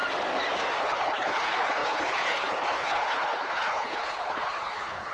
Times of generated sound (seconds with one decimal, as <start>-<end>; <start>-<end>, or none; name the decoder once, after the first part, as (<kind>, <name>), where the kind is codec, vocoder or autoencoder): 0.8-5.1 (codec, HILCodec)